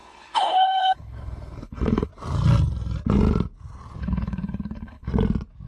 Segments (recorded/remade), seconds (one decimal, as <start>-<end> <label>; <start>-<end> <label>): 0.0-2.1 remade; 2.1-4.0 recorded; 4.0-5.1 remade; 5.1-5.7 recorded